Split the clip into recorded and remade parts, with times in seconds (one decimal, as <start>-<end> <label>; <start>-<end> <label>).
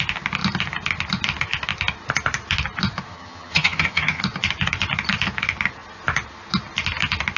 0.0-3.1 recorded; 3.1-4.2 remade; 4.2-7.4 recorded